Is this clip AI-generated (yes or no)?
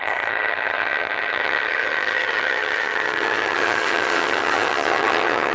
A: yes